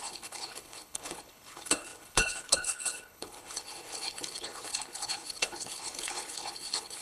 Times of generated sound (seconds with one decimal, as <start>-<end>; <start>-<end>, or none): 0.0-7.0